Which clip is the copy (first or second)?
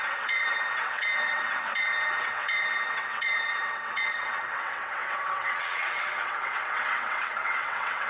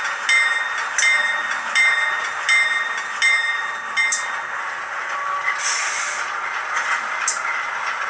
first